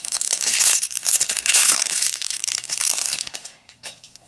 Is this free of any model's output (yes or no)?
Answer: no